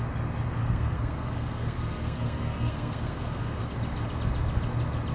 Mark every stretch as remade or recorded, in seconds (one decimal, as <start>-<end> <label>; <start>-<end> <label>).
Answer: 0.0-0.6 recorded; 0.6-3.7 remade; 3.7-5.1 recorded